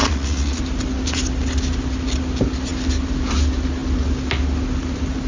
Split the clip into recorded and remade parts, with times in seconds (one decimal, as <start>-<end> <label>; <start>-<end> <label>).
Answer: 0.0-0.6 remade; 0.6-5.3 recorded